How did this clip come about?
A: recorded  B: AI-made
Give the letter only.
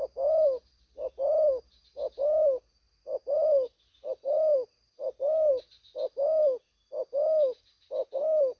A